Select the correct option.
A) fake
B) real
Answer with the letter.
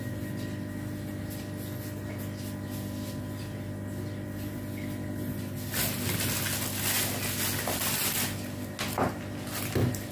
B